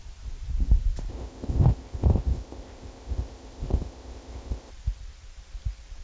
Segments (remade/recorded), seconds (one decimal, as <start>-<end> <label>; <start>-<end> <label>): 0.0-1.1 recorded; 1.1-4.7 remade; 4.7-6.0 recorded

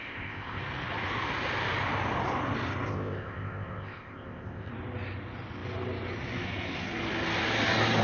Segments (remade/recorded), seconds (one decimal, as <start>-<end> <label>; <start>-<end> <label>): 0.0-0.6 remade; 0.6-2.9 recorded; 2.9-4.7 remade; 4.7-8.0 recorded

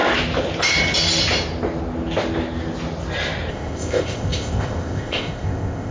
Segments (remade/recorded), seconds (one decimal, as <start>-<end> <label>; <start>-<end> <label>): 0.0-3.5 recorded; 3.5-5.9 remade

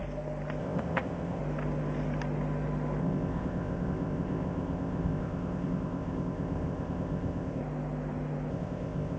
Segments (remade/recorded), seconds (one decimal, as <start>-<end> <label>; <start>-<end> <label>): 0.0-0.6 recorded; 0.6-1.4 remade; 1.4-3.0 recorded; 3.0-7.6 remade; 7.6-8.5 recorded; 8.5-9.2 remade

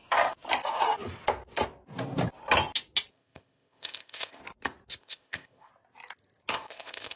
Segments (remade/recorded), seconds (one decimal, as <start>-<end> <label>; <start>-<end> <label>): 0.0-3.1 recorded; 3.1-4.4 remade; 4.4-5.0 recorded; 5.0-5.7 remade; 5.7-6.5 recorded; 6.5-7.2 remade

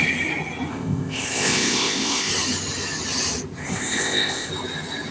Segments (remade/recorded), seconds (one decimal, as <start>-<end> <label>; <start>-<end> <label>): 0.0-0.7 recorded; 0.7-2.3 remade; 2.3-3.6 recorded; 3.6-4.5 remade; 4.5-5.1 recorded